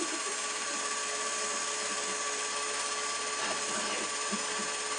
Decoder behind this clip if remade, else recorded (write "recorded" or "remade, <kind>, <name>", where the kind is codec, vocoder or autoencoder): recorded